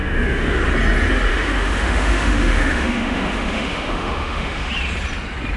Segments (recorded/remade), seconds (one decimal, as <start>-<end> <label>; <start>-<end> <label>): 0.0-0.6 remade; 0.6-1.3 recorded; 1.3-4.7 remade; 4.7-5.6 recorded